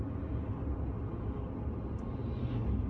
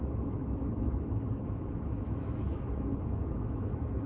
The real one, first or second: first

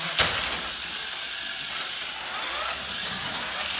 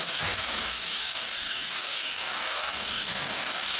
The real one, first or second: first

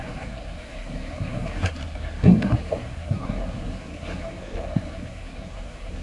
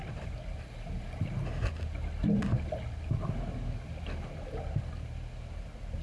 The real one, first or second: second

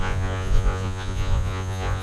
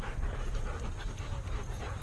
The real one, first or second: second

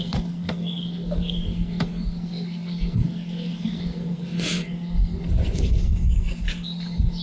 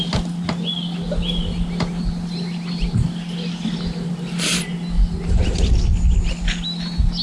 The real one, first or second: second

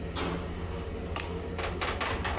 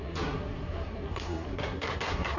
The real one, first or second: first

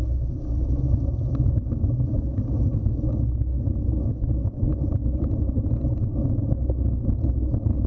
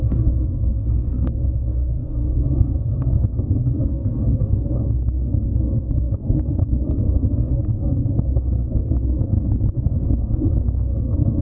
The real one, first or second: first